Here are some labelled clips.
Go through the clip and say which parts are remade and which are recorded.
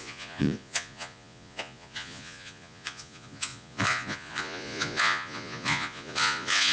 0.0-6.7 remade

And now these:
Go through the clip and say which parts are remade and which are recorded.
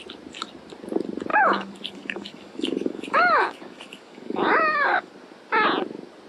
0.0-1.3 recorded; 1.3-5.1 remade; 5.1-6.3 recorded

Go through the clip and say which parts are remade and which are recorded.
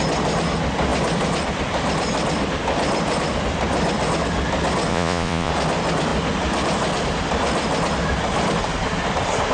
0.0-4.9 recorded; 4.9-5.5 remade; 5.5-9.5 recorded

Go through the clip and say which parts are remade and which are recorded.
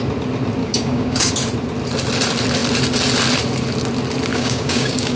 0.0-0.6 recorded; 0.6-1.3 remade; 1.3-4.3 recorded; 4.3-5.2 remade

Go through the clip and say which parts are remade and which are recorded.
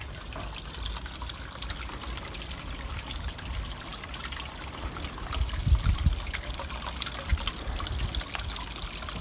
0.0-9.2 recorded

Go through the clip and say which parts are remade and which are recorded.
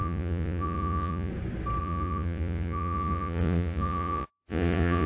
0.0-1.3 remade; 1.3-1.8 recorded; 1.8-5.1 remade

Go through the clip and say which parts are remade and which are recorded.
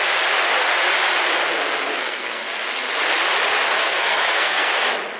0.0-1.9 recorded; 1.9-2.5 remade; 2.5-3.8 recorded; 3.8-4.7 remade; 4.7-5.2 recorded